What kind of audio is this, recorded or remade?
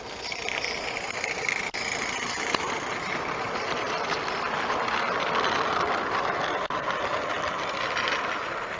recorded